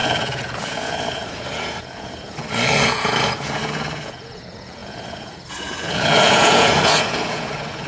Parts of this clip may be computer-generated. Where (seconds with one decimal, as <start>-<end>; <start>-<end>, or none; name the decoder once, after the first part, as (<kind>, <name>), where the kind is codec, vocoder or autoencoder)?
0.0-7.9 (vocoder, Vocos)